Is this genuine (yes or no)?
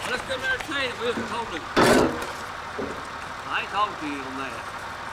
yes